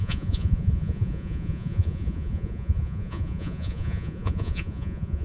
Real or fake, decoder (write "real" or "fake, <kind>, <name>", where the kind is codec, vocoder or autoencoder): fake, vocoder, Vocos